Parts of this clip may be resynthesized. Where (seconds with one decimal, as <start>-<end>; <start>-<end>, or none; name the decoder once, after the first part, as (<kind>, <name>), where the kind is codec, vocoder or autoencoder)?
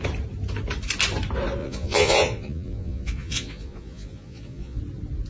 1.6-4.8 (vocoder, Vocos)